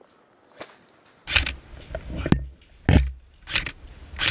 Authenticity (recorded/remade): recorded